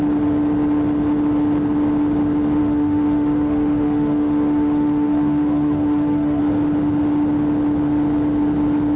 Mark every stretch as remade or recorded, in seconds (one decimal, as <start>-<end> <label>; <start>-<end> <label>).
0.0-2.6 recorded; 2.6-6.4 remade; 6.4-9.0 recorded